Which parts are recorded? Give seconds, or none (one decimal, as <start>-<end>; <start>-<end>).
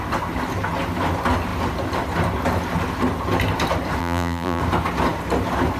0.0-4.0; 4.6-5.8